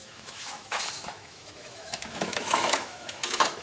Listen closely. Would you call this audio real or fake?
fake